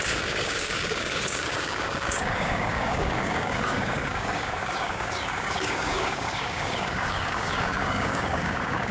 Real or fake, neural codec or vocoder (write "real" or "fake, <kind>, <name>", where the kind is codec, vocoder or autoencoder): fake, codec, DAC